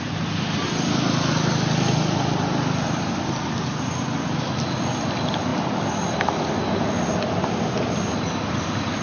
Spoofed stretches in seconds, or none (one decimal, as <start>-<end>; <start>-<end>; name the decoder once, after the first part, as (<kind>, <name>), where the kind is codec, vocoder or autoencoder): none